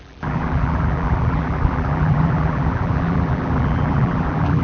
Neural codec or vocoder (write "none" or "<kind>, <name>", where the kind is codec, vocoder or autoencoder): vocoder, BigVGAN v2